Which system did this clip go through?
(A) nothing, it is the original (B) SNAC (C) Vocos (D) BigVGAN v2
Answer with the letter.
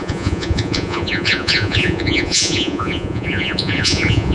C